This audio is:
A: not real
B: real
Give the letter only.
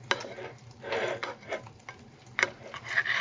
B